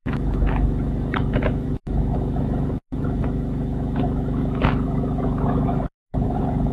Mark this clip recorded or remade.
remade